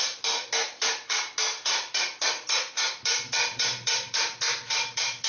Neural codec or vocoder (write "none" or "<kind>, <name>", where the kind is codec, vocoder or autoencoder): none